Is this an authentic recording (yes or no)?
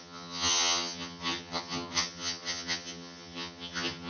no